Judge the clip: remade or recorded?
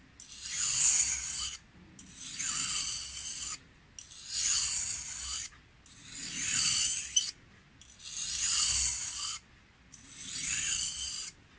recorded